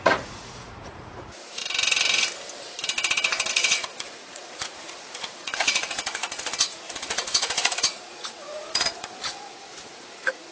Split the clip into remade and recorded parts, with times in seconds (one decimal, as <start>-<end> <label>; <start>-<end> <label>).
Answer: 0.0-1.6 remade; 1.6-3.5 recorded; 3.5-10.5 remade